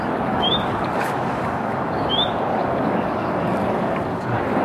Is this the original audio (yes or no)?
no